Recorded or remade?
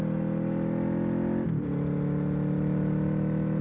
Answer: recorded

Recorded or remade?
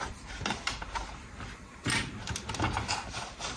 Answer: recorded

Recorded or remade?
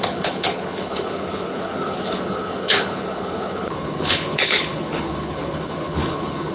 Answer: remade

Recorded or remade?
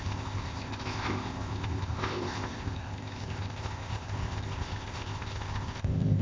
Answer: remade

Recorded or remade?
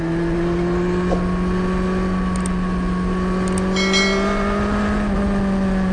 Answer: recorded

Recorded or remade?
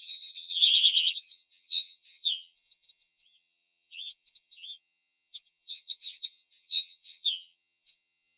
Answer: remade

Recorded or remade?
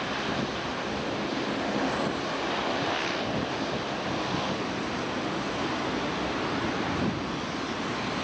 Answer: recorded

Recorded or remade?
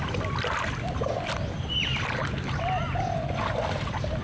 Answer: recorded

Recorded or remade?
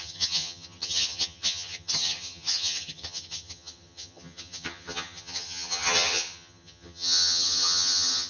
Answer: remade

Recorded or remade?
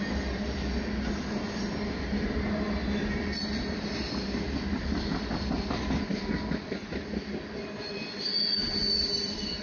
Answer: recorded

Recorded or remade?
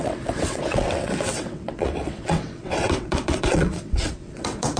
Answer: remade